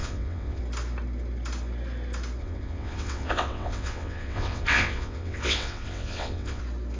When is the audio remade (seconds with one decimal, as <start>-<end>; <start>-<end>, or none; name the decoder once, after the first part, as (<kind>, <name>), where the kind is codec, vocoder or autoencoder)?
0.0-0.6 (vocoder, WaveNeXt); 2.4-6.6